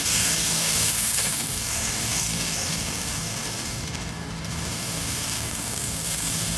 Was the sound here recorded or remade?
remade